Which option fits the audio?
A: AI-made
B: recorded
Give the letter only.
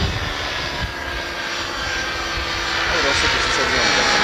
B